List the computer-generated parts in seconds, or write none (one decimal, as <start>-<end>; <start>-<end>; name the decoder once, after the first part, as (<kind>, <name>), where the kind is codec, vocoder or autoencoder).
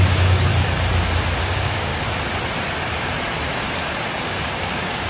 0.0-0.5 (codec, DAC); 1.4-1.9; 4.3-5.1